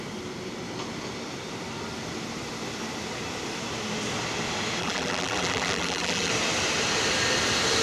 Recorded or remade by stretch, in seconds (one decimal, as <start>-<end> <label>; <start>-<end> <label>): 0.0-4.8 recorded; 4.8-6.3 remade; 6.3-7.8 recorded